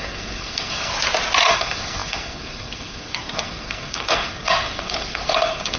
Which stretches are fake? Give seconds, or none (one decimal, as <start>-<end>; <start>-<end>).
0.0-0.9; 1.5-5.8